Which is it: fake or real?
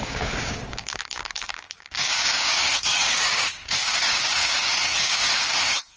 fake